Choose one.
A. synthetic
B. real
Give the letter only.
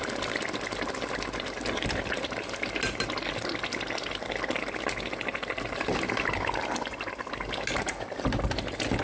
B